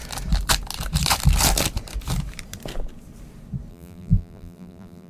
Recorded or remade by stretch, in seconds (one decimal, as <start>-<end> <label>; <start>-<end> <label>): 0.0-3.7 recorded; 3.7-5.1 remade